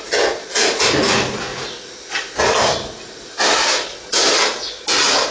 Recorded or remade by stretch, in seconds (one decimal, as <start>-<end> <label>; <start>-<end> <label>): 0.0-5.3 recorded